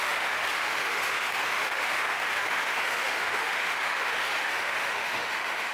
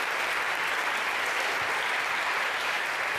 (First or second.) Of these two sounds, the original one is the second